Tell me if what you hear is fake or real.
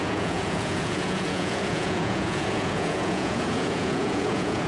fake